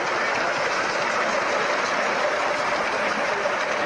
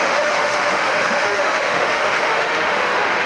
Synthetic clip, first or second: second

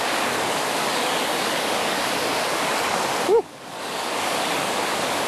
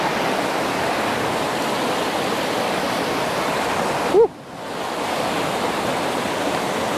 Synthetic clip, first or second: first